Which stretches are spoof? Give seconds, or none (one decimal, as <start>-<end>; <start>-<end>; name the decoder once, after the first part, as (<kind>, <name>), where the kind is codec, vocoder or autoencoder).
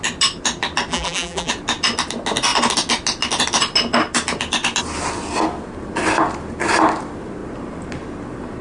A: 0.9-1.5 (vocoder, BigVGAN v2)